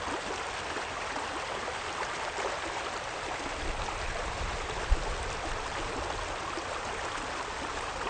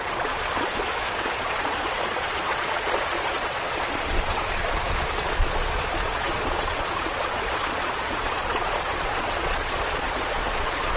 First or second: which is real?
first